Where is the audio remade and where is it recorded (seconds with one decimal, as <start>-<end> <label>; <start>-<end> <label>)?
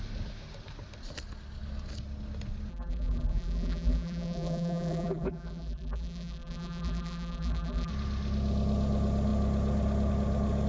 0.0-2.7 recorded; 2.7-7.9 remade; 7.9-10.7 recorded